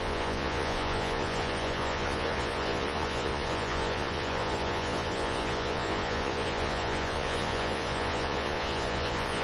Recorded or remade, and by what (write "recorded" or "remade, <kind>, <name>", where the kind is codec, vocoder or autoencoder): remade, vocoder, Vocos